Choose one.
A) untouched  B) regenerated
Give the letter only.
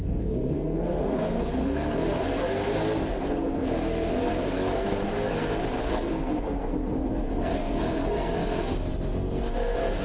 B